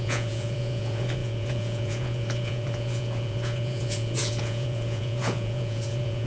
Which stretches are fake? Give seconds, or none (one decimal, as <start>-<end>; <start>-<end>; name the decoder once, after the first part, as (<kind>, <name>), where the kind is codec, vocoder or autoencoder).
0.0-6.3 (vocoder, Vocos)